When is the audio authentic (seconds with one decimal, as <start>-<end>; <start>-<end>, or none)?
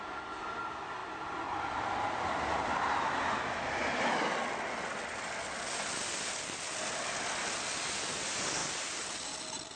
0.0-9.8